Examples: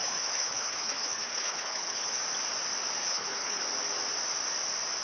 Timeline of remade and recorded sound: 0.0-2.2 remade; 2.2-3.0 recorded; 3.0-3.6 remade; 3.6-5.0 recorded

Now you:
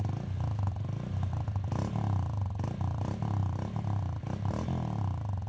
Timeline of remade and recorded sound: 0.0-5.5 recorded

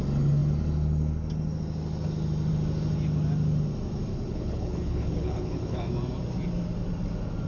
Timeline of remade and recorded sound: 0.0-4.1 recorded; 4.1-5.9 remade; 5.9-7.5 recorded

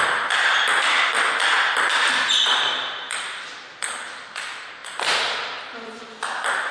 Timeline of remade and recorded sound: 0.0-6.7 recorded